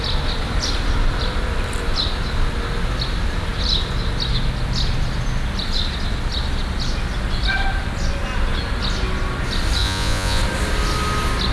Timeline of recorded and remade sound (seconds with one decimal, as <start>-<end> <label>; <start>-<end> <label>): 0.0-9.8 recorded; 9.8-10.4 remade; 10.4-11.5 recorded